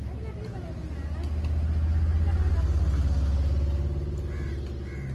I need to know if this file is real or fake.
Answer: real